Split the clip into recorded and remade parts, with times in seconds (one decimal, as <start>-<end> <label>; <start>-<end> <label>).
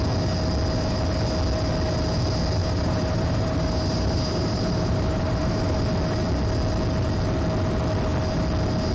0.0-2.6 recorded; 2.6-5.8 remade; 5.8-8.9 recorded